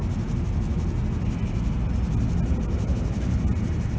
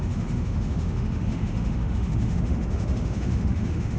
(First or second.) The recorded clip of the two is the first